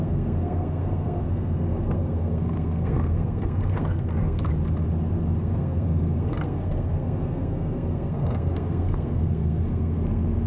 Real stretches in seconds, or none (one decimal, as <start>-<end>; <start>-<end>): 4.5-5.4